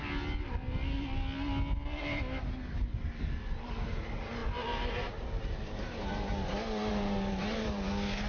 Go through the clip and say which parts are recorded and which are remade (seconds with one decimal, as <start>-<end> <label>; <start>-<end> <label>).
0.0-4.4 recorded; 4.4-6.3 remade; 6.3-6.9 recorded; 6.9-7.9 remade; 7.9-8.3 recorded